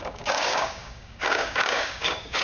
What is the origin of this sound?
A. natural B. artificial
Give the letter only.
B